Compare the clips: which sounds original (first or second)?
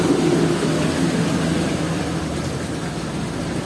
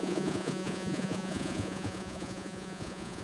first